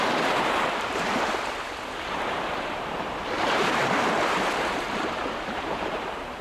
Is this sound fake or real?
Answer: fake